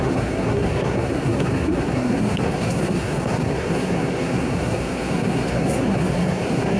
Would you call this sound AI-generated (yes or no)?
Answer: yes